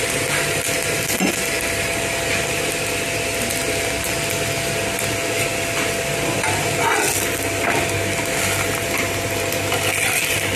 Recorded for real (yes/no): yes